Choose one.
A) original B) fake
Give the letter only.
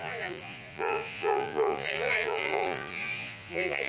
B